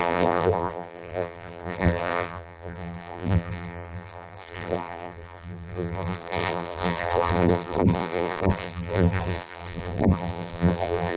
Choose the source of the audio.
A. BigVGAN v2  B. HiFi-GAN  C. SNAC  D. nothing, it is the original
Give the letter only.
A